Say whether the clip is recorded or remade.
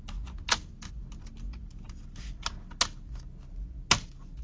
recorded